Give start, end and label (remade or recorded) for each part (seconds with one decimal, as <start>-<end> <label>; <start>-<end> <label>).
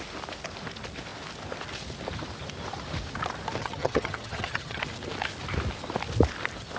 0.0-3.6 recorded; 3.6-4.8 remade; 4.8-6.8 recorded